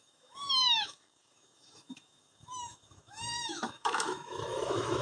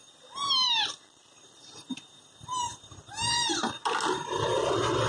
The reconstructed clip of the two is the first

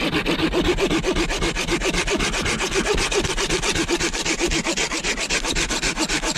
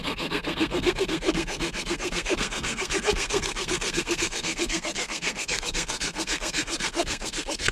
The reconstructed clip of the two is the second